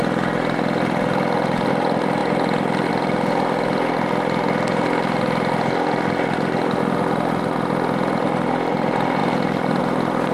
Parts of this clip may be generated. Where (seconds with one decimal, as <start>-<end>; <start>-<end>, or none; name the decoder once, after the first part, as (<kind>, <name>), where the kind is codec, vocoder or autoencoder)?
9.2-9.8 (vocoder, BigVGAN v2)